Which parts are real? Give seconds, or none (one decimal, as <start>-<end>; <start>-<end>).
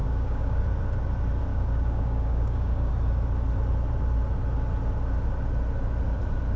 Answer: 0.6-1.5; 2.9-6.6